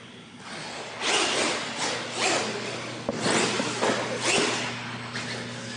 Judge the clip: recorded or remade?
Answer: recorded